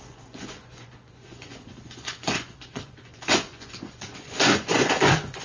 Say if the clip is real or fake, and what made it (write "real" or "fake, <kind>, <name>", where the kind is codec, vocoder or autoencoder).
fake, vocoder, Vocos